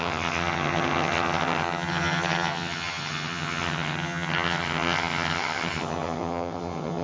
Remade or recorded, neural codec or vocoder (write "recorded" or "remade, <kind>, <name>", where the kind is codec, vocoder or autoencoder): remade, vocoder, HiFi-GAN